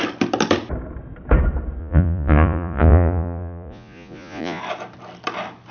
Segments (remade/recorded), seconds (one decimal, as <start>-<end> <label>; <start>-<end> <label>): 0.0-1.8 recorded; 1.8-4.6 remade; 4.6-5.7 recorded